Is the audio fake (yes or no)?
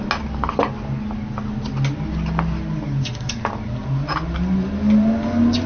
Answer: no